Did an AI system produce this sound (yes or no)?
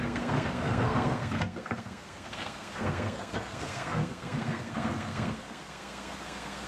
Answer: yes